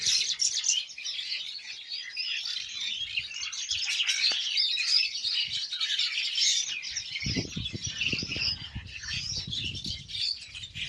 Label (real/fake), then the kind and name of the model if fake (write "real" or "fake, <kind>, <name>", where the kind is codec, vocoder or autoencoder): real